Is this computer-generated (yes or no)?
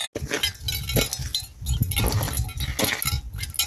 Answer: no